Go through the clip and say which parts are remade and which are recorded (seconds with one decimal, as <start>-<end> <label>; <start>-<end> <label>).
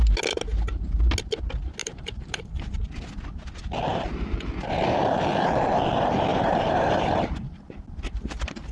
0.0-1.8 recorded; 1.8-2.5 remade; 2.5-3.9 recorded; 3.9-5.0 remade; 5.0-6.3 recorded; 6.3-8.7 remade